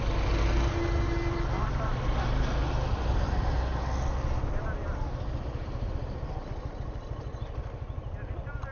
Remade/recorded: recorded